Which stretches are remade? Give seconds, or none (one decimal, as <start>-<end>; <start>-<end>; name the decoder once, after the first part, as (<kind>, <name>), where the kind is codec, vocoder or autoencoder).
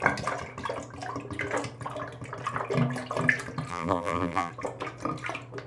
3.7-4.5 (vocoder, BigVGAN v2)